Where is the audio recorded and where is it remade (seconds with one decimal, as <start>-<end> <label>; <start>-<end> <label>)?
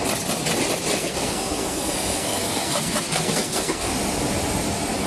0.0-1.0 recorded; 1.0-3.9 remade; 3.9-5.1 recorded